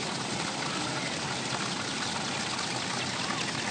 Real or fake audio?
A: real